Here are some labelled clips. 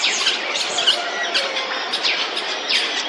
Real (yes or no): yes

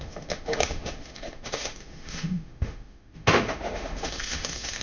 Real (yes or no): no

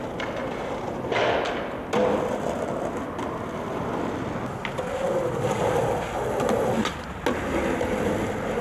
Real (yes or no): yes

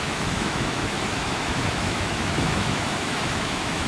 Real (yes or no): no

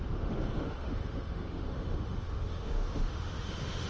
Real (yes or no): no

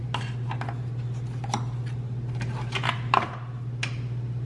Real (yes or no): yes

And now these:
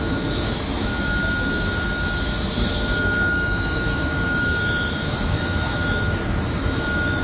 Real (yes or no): no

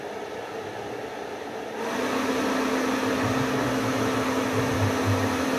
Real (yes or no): yes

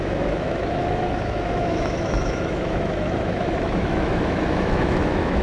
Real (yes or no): no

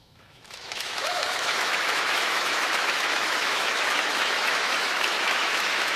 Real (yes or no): no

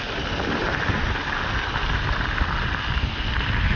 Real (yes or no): yes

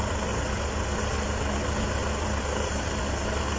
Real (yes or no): yes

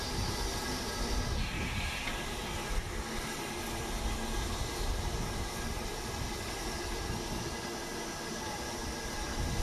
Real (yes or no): yes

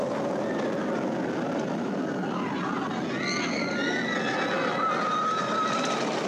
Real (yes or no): yes